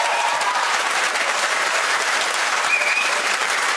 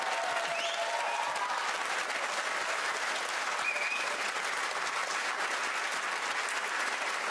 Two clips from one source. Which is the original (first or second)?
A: second